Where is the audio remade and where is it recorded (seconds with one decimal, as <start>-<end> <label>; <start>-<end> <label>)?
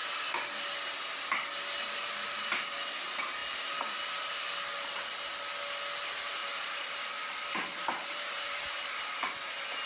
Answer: 0.0-6.4 recorded; 6.4-9.3 remade; 9.3-9.9 recorded